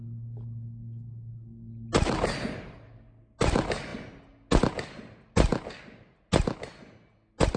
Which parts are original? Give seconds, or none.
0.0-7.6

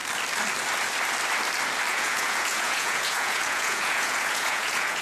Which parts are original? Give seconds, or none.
0.0-1.9

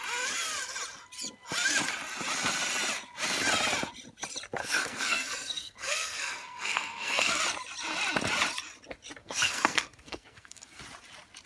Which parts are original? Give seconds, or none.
0.0-4.6; 7.4-9.2; 10.8-11.5

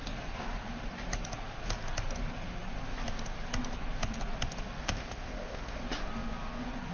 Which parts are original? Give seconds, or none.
0.0-4.8; 5.8-6.9